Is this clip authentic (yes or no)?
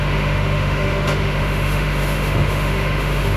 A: no